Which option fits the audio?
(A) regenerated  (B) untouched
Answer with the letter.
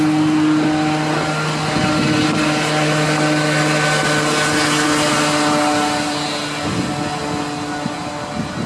B